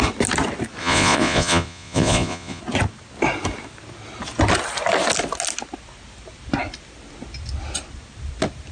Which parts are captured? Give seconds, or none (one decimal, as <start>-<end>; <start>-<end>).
0.0-0.8; 2.6-8.7